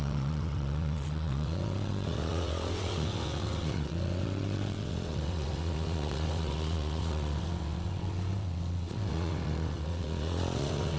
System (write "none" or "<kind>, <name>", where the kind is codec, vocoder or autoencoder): vocoder, WaveNeXt